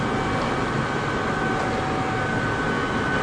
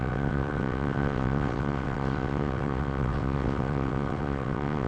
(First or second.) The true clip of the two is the first